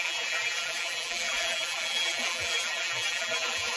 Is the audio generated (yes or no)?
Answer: yes